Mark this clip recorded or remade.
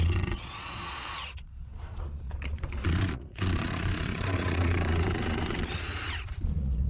remade